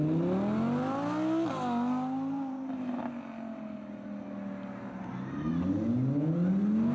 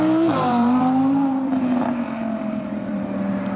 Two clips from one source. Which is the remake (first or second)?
second